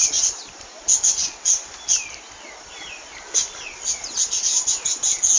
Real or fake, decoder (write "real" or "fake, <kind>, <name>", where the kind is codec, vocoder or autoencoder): real